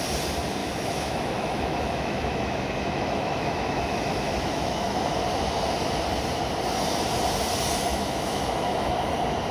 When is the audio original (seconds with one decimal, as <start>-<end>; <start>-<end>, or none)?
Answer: 0.0-0.6; 5.1-7.9; 8.9-9.5